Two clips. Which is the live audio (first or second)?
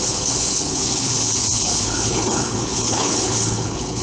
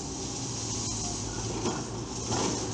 second